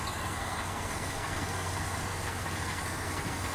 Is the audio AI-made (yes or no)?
yes